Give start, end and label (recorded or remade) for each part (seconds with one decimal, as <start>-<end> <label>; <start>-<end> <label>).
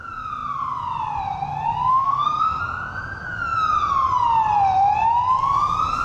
0.0-1.9 recorded; 1.9-2.6 remade; 2.6-6.0 recorded